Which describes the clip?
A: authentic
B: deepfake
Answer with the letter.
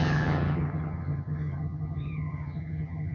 B